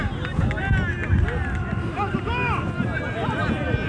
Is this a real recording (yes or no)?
yes